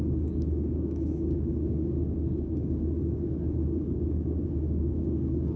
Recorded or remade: remade